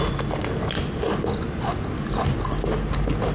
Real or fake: real